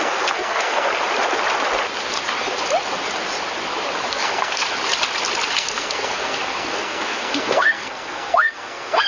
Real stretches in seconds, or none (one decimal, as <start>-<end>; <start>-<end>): 0.9-4.1; 4.6-5.5